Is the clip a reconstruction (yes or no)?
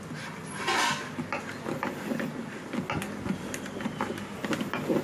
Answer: no